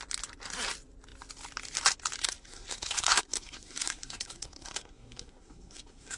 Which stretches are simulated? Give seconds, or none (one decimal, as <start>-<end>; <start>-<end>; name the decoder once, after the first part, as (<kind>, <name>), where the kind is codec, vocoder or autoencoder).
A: 2.2-6.2 (codec, SNAC)